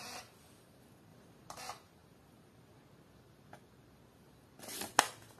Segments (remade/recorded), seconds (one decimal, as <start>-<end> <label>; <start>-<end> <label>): 0.0-1.1 recorded; 1.1-1.6 remade; 1.6-5.4 recorded